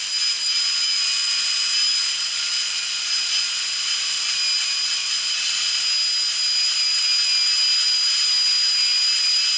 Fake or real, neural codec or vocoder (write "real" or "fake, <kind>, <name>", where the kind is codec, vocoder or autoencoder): real